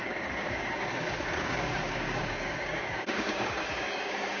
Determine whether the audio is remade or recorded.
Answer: remade